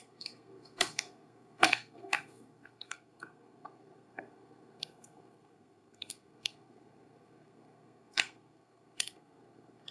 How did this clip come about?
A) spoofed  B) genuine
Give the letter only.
A